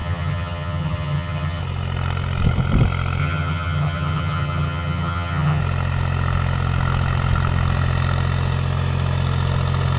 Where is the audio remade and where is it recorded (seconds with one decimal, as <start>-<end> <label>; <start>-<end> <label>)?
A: 0.0-1.6 remade; 1.6-3.2 recorded; 3.2-5.6 remade; 5.6-10.0 recorded